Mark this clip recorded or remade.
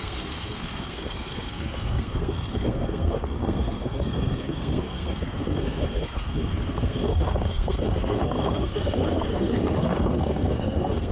remade